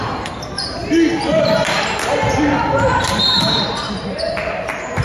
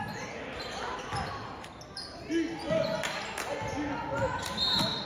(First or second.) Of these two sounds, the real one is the second